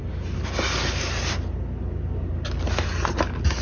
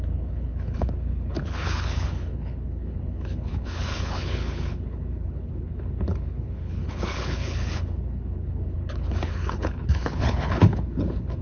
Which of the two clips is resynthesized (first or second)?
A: second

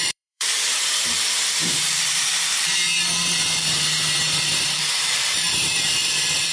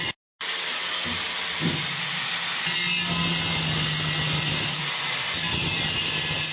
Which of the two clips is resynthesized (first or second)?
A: first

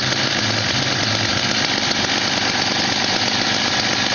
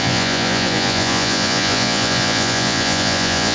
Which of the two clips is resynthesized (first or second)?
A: second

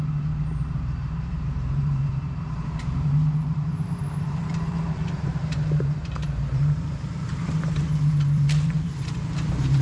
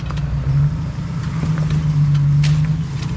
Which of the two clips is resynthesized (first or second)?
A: first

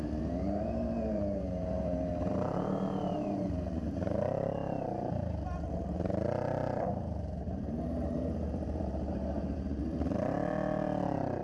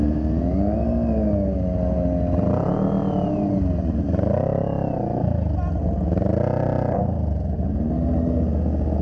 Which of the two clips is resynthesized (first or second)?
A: first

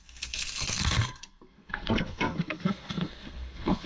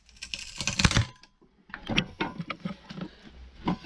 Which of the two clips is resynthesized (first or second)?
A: first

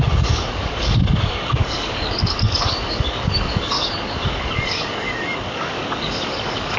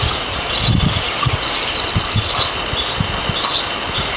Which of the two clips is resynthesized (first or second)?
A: first